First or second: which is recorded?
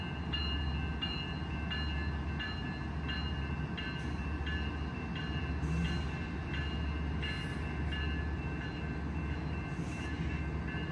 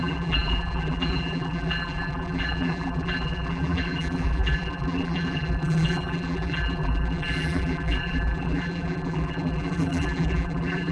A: first